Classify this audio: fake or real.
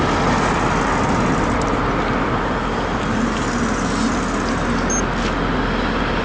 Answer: real